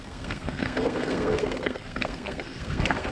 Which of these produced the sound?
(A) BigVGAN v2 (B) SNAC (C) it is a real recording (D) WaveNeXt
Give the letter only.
B